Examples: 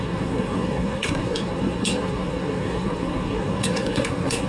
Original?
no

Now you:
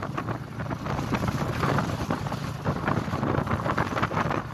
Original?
yes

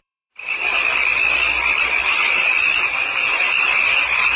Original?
no